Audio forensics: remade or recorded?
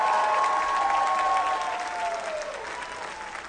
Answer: recorded